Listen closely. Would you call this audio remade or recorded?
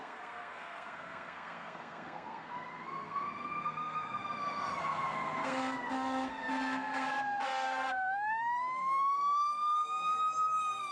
remade